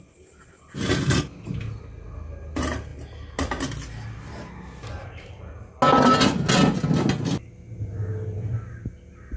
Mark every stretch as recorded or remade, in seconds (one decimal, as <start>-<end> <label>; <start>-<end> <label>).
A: 0.0-9.4 recorded